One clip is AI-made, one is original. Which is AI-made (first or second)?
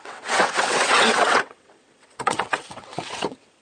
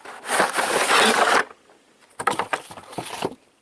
first